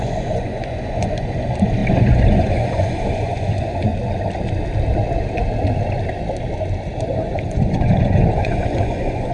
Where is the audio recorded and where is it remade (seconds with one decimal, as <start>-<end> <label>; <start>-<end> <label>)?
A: 0.0-3.9 remade; 3.9-7.0 recorded; 7.0-9.3 remade